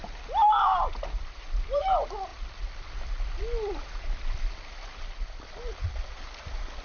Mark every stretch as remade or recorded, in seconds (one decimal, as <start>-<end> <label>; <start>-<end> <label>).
0.0-6.8 recorded

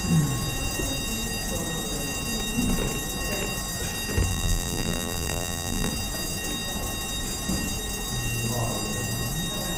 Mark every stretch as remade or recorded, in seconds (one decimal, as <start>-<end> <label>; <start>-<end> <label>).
0.0-4.3 recorded; 4.3-5.9 remade; 5.9-9.8 recorded

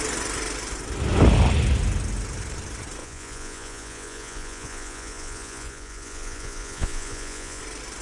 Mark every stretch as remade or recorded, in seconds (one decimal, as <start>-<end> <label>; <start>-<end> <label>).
0.0-3.0 recorded; 3.0-7.6 remade; 7.6-8.0 recorded

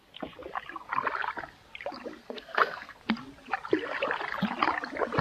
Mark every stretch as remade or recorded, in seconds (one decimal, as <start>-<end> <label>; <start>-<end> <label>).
0.0-2.2 recorded; 2.2-3.0 remade; 3.0-5.2 recorded

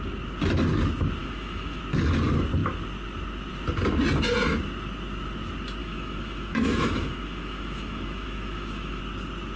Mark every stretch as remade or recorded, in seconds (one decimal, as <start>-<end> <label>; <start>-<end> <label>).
0.0-1.2 recorded; 1.2-1.8 remade; 1.8-5.8 recorded; 5.8-9.0 remade; 9.0-9.6 recorded

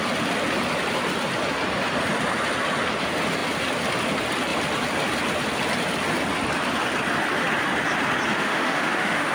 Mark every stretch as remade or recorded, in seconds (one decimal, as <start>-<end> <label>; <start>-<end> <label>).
0.0-8.3 recorded; 8.3-9.3 remade